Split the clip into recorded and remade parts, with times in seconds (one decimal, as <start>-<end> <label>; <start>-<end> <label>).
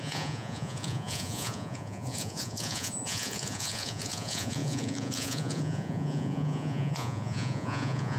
0.0-8.2 remade